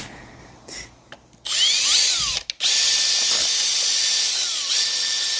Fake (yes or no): no